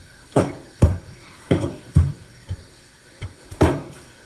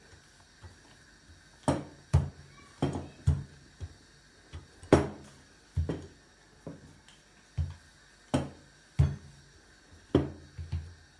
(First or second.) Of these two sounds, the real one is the second